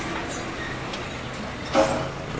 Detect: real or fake real